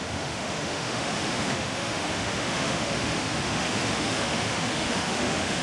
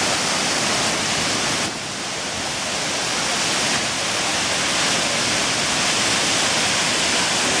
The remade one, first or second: first